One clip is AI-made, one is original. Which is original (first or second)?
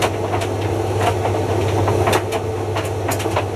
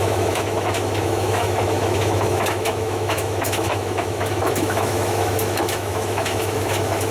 first